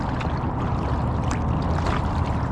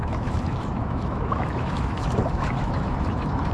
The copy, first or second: second